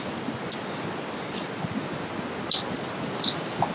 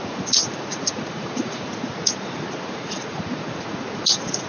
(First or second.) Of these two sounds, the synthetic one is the second